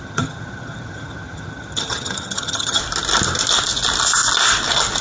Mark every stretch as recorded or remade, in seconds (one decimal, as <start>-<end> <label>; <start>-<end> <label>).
0.0-2.8 remade; 2.8-5.0 recorded